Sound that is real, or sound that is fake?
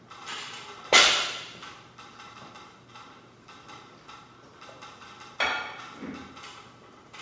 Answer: real